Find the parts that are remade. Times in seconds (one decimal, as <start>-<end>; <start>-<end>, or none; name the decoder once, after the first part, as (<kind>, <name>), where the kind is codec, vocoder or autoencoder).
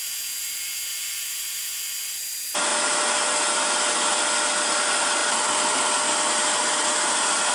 0.9-1.8 (vocoder, BigVGAN v2)